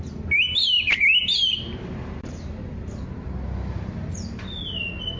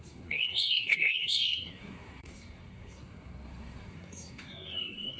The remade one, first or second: second